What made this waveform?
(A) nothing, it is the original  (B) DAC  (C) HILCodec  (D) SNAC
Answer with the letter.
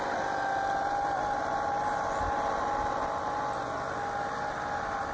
A